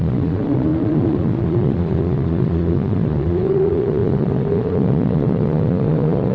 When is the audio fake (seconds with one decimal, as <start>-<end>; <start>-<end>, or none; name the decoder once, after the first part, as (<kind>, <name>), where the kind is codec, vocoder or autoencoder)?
0.0-6.3 (vocoder, Vocos)